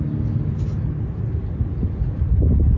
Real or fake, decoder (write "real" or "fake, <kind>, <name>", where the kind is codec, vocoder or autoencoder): real